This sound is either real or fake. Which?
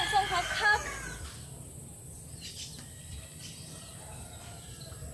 real